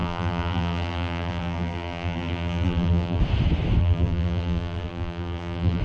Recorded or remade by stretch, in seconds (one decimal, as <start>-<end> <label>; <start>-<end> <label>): 0.0-3.2 remade; 3.2-3.8 recorded; 3.8-5.8 remade